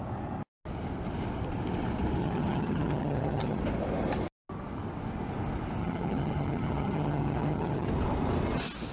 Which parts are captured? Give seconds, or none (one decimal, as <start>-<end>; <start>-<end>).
0.0-2.2; 3.6-5.8; 7.9-8.9